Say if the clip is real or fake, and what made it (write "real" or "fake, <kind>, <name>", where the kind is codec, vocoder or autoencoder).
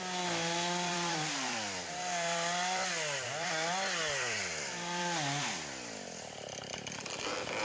fake, vocoder, BigVGAN v2